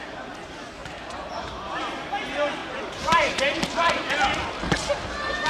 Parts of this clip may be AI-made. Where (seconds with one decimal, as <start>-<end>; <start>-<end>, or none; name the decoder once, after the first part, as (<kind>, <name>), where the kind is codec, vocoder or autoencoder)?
0.8-1.8 (vocoder, BigVGAN v2); 2.6-4.1